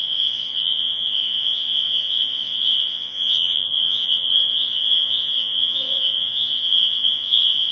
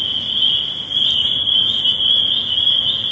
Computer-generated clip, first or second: first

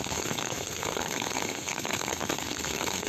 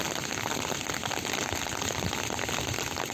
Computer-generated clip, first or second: first